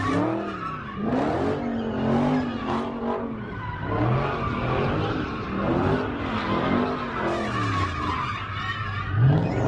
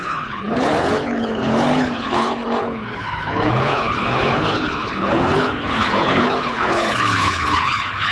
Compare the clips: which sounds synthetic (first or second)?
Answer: second